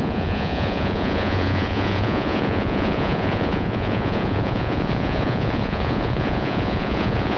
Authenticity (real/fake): fake